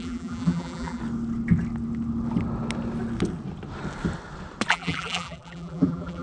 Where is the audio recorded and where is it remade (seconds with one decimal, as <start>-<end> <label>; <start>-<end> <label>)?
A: 0.0-1.0 remade; 1.0-4.7 recorded; 4.7-6.2 remade